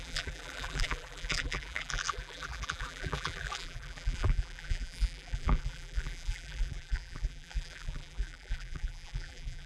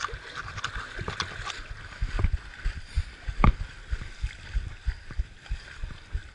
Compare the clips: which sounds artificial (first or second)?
first